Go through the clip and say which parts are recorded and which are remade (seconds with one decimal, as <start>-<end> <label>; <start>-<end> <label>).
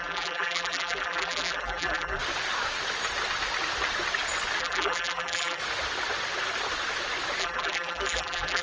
0.0-2.2 remade; 2.2-4.6 recorded; 4.6-5.6 remade; 5.6-7.4 recorded; 7.4-8.6 remade